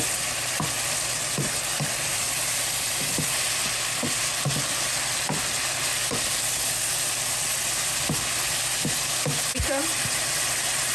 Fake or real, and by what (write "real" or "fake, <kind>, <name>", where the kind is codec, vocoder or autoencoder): fake, vocoder, BigVGAN v2